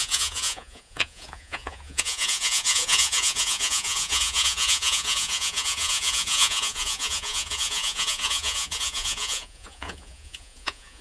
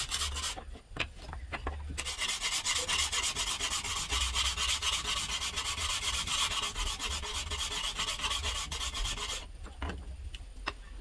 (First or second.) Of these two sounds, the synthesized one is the first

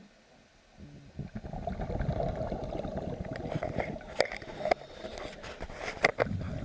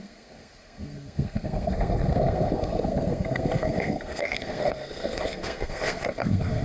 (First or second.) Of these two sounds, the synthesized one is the second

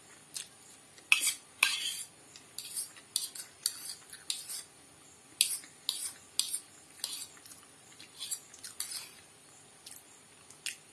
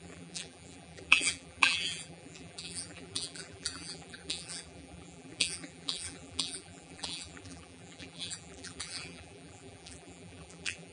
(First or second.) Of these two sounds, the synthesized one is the second